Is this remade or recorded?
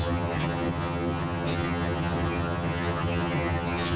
remade